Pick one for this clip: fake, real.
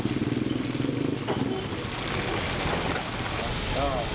real